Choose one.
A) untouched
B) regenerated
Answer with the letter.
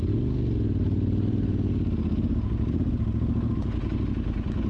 A